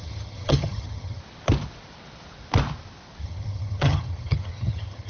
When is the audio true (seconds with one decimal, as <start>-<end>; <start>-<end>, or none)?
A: 1.2-3.2